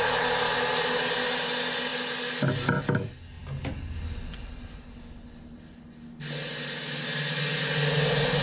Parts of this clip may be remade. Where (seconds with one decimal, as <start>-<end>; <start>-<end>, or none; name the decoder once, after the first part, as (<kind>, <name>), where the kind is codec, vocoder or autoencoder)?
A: none